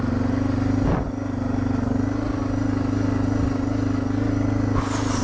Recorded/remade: recorded